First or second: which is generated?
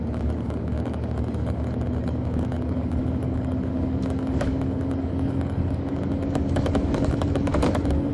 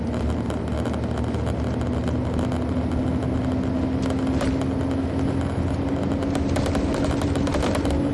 first